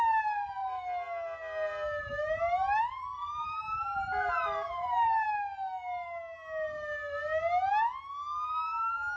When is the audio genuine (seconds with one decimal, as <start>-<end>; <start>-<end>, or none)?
0.6-2.0; 5.2-9.2